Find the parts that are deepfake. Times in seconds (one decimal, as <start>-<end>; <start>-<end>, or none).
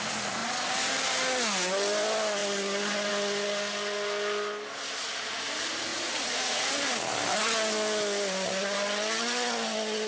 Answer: 5.9-6.7